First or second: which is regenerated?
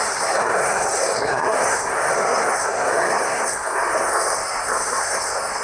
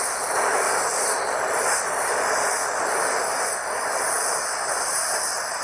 first